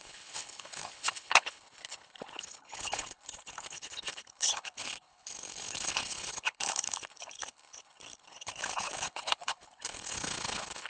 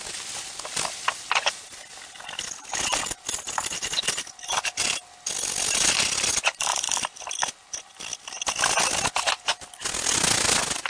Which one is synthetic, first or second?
first